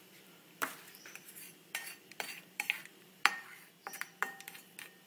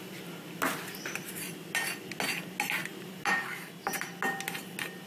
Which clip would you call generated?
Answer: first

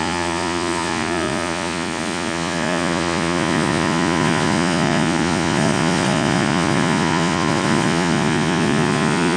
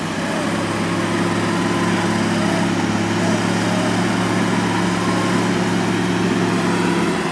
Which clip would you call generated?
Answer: first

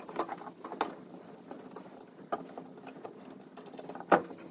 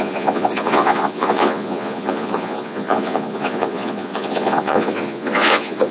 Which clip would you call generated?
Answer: second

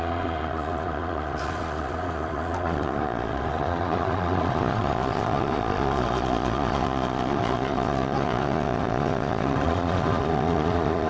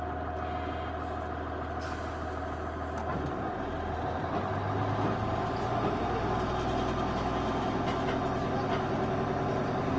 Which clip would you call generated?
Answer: first